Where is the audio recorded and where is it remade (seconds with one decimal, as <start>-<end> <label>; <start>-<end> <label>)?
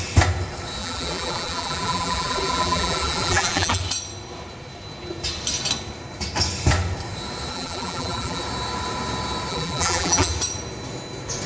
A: 0.0-0.8 recorded; 0.8-3.8 remade; 3.8-7.5 recorded; 7.5-8.4 remade; 8.4-9.5 recorded; 9.5-10.3 remade; 10.3-11.5 recorded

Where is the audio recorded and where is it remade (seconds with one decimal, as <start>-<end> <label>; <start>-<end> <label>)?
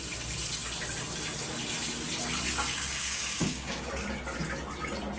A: 0.0-2.7 recorded; 2.7-3.9 remade; 3.9-5.2 recorded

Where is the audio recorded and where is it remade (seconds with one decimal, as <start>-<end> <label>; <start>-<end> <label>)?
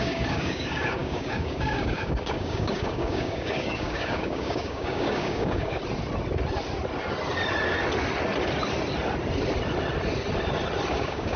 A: 0.0-5.8 remade; 5.8-10.9 recorded; 10.9-11.4 remade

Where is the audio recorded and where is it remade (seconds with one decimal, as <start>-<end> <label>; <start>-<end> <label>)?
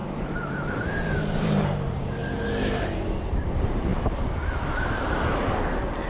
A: 0.0-2.2 remade; 2.2-3.3 recorded; 3.3-3.9 remade; 3.9-4.9 recorded; 4.9-6.1 remade